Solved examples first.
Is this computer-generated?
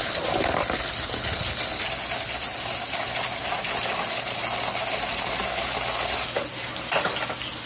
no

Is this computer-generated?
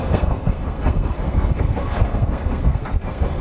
yes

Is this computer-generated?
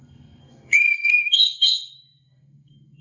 yes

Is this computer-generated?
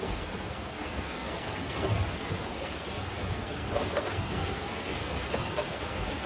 yes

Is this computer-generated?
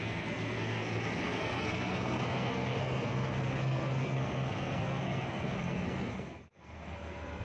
yes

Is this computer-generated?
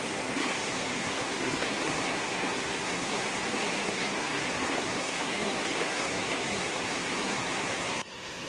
yes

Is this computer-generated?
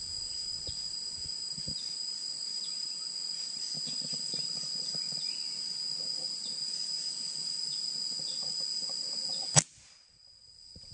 no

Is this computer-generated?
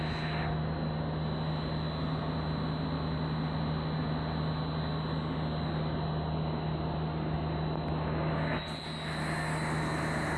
no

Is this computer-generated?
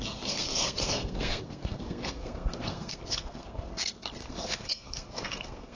yes